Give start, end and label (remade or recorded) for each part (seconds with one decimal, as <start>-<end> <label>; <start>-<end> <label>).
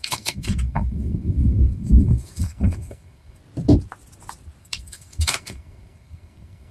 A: 0.0-3.4 remade; 3.4-4.6 recorded; 4.6-6.7 remade